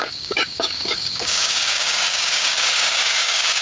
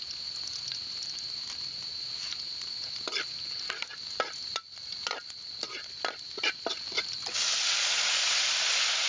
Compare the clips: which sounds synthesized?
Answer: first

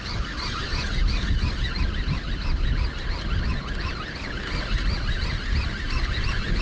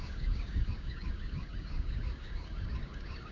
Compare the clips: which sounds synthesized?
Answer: second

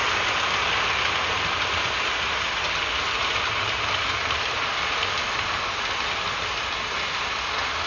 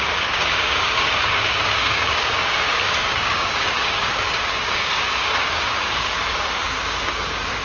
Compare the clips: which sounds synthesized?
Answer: second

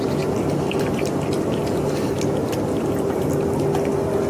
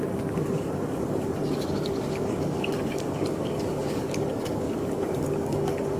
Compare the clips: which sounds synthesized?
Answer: second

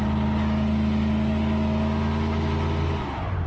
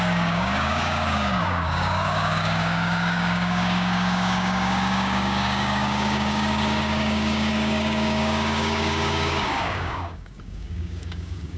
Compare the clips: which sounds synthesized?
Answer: second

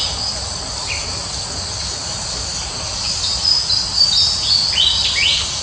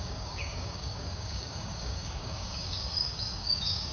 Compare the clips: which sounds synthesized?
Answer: second